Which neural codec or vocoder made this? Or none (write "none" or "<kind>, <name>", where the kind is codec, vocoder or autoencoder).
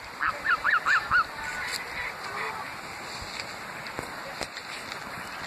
none